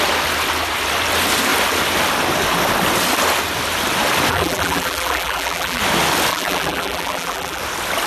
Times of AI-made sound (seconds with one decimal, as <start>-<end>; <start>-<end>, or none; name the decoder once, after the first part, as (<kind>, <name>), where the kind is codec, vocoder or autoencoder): 4.3-5.8 (vocoder, BigVGAN v2); 6.3-7.6